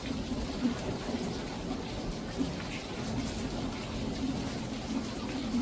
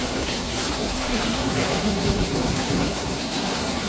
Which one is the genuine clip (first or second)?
first